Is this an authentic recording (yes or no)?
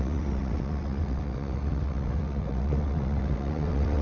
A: no